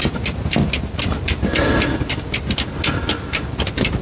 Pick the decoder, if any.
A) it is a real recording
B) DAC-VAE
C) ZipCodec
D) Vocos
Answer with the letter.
A